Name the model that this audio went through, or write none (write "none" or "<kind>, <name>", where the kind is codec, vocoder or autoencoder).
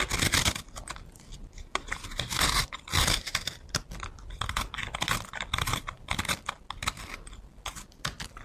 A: none